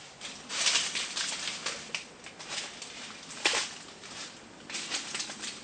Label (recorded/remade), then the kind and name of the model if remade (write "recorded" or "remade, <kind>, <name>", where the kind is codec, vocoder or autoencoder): recorded